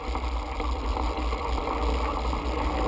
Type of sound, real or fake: real